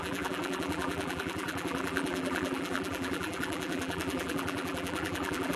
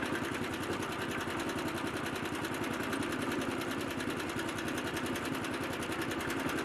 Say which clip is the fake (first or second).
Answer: first